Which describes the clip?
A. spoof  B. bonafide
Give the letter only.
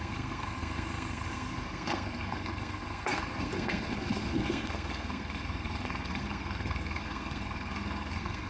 A